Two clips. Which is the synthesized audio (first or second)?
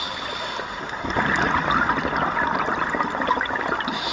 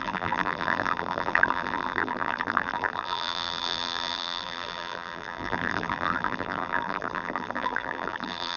second